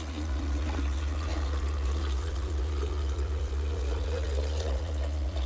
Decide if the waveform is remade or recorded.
remade